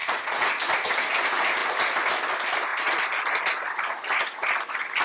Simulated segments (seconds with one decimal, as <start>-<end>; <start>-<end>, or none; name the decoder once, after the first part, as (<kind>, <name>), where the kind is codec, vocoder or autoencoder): 0.0-0.5 (vocoder, Vocos)

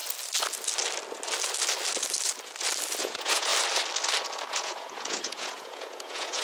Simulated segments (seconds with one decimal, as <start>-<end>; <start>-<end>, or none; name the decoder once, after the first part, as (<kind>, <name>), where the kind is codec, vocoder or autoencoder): 3.0-3.5 (vocoder, Vocos); 4.5-6.4

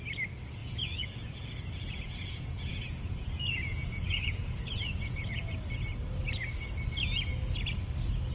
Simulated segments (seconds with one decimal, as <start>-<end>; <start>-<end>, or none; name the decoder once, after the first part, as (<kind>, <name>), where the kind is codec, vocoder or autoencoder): 0.6-5.5 (vocoder, Vocos)

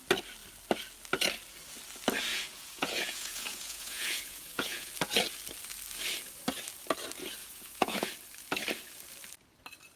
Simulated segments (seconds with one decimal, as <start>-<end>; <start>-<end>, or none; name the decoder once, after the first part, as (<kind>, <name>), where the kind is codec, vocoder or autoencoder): 2.3-4.9 (vocoder, Vocos); 7.4-8.1

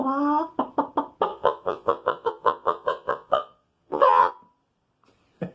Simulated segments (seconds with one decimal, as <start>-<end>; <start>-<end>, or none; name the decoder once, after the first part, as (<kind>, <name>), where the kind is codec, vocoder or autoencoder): 1.3-4.3 (vocoder, Vocos)

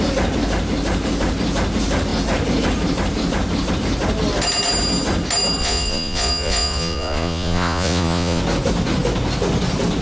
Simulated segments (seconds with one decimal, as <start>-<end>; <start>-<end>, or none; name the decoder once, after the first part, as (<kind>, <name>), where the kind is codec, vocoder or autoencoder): 5.6-8.4 (vocoder, Vocos)